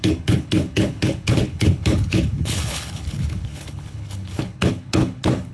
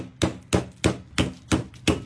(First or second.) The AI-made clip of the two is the first